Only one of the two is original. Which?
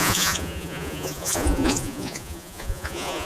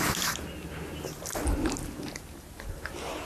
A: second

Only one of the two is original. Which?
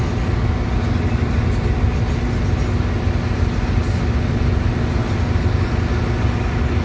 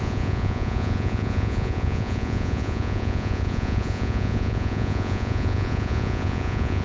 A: first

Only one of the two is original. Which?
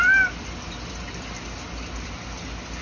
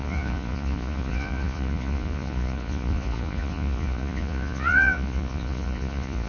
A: first